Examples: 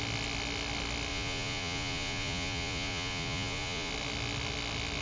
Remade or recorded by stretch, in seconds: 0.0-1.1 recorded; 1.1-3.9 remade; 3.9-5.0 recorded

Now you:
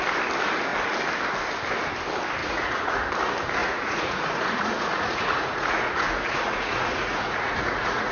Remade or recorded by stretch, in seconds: 0.0-2.4 recorded; 2.4-3.0 remade; 3.0-3.6 recorded; 3.6-8.1 remade

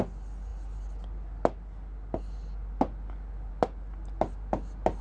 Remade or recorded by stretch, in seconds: 0.0-5.0 recorded

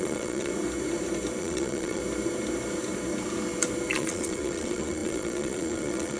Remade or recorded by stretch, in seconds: 0.0-0.5 remade; 0.5-1.4 recorded; 1.4-2.0 remade; 2.0-3.9 recorded; 3.9-6.2 remade

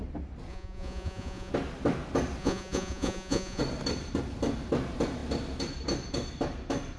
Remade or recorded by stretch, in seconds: 0.0-0.5 recorded; 0.5-1.5 remade; 1.5-2.4 recorded; 2.4-3.6 remade; 3.6-7.0 recorded

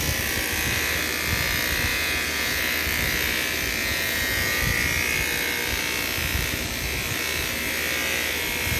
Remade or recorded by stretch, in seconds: 0.0-1.9 recorded; 1.9-2.6 remade; 2.6-3.8 recorded; 3.8-4.6 remade; 4.6-8.8 recorded